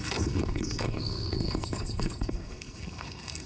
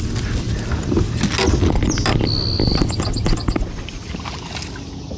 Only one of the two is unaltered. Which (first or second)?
second